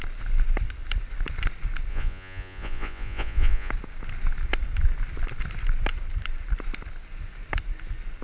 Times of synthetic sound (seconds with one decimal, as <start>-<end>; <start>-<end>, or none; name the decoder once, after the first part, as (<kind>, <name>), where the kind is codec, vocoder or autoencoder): 1.9-3.7 (vocoder, Vocos)